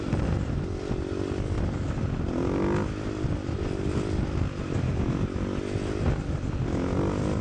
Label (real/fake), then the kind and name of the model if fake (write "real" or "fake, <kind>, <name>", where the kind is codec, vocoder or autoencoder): real